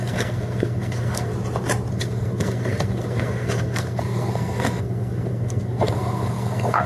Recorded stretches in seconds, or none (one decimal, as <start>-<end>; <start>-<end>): 1.3-1.9